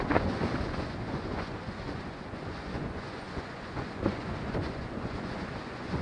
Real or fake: fake